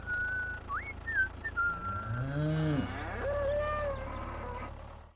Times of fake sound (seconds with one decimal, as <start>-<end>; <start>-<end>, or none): none